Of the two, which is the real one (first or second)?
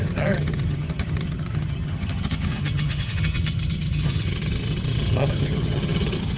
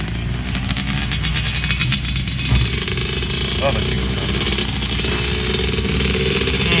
second